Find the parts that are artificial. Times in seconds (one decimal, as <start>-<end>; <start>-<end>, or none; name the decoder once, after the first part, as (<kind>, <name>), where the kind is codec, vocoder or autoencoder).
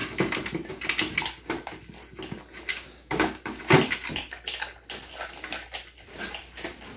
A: 2.7-3.6 (codec, DAC)